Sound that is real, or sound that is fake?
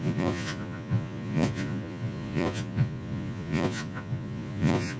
fake